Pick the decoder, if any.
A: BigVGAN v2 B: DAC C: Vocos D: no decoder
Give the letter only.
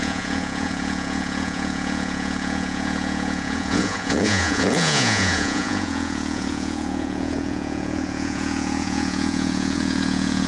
C